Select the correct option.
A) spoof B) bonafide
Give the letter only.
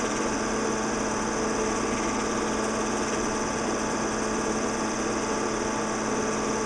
B